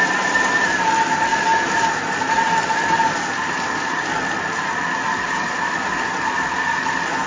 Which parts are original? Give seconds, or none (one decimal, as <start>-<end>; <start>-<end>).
0.0-7.3